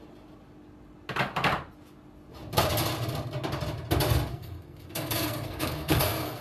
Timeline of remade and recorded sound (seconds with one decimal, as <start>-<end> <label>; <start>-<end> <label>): 0.0-4.3 recorded; 4.3-6.4 remade